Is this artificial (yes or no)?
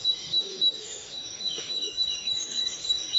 yes